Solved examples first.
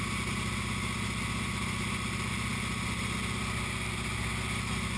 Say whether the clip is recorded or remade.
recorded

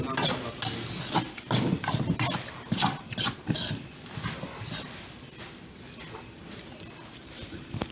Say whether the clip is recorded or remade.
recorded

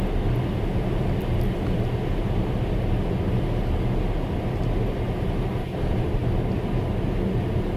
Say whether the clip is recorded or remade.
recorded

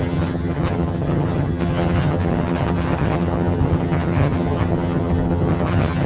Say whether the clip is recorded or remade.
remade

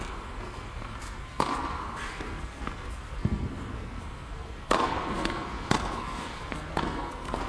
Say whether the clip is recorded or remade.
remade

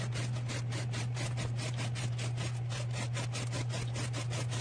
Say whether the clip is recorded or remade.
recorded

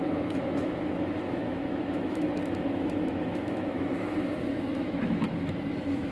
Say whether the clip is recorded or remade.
remade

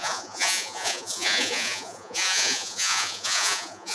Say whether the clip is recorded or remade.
remade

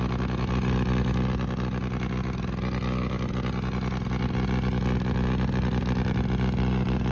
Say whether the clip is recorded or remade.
recorded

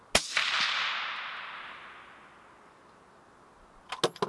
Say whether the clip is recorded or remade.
recorded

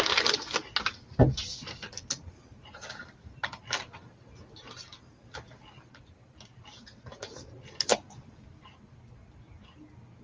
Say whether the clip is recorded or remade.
recorded